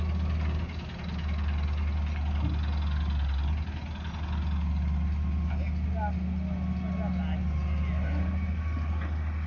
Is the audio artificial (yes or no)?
no